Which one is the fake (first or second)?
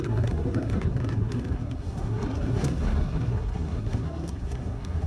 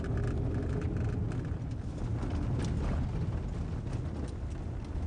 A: first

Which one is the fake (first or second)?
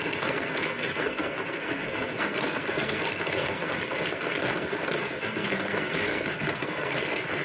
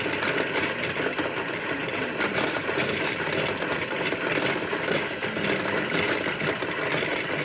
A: first